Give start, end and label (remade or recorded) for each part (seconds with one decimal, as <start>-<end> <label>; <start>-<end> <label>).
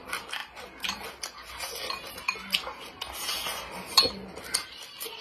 0.0-5.2 recorded